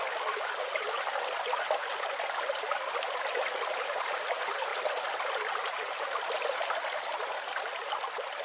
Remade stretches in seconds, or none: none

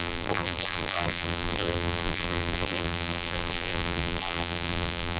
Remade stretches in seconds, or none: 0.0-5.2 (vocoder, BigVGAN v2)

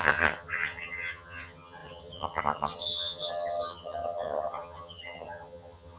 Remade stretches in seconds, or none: 0.0-6.0 (vocoder, HiFi-GAN)